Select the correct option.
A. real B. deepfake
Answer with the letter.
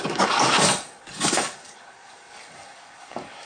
B